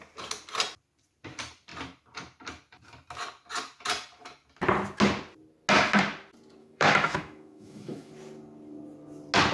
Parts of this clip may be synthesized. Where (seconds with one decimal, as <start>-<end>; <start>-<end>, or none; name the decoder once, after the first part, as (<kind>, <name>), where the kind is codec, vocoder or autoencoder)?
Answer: 6.6-8.1 (autoencoder, DAC-VAE)